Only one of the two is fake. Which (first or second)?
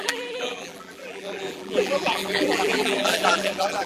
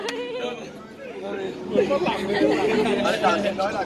first